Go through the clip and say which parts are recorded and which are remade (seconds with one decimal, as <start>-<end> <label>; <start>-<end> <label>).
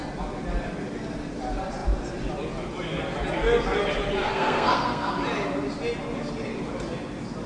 0.0-4.2 recorded; 4.2-5.1 remade; 5.1-7.5 recorded